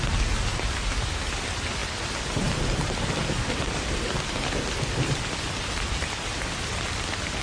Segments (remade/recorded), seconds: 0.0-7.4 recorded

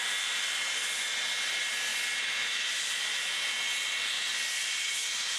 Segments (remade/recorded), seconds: 0.0-5.4 recorded

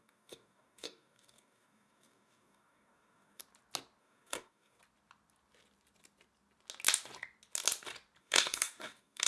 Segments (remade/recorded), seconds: 0.0-3.4 remade; 3.4-4.0 recorded; 4.0-4.8 remade; 4.8-8.2 recorded; 8.2-9.3 remade

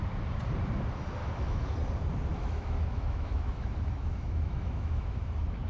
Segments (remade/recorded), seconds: 0.0-1.2 recorded; 1.2-1.7 remade; 1.7-2.3 recorded; 2.3-5.2 remade; 5.2-5.7 recorded

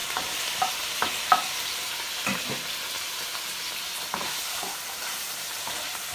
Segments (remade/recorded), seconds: 0.0-6.1 remade

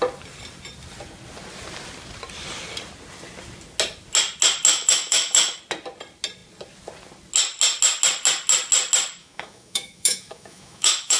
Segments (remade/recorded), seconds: 0.0-4.7 recorded; 4.7-5.6 remade; 5.6-9.2 recorded; 9.2-11.2 remade